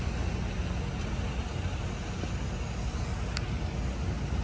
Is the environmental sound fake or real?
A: real